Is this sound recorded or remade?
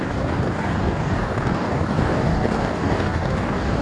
remade